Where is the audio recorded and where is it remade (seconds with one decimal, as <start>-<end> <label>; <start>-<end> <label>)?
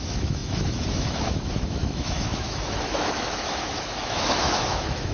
0.0-5.1 remade